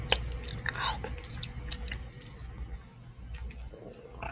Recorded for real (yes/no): yes